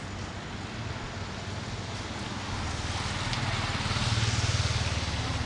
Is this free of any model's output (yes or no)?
yes